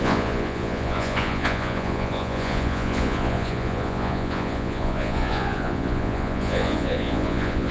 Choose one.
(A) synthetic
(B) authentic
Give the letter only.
A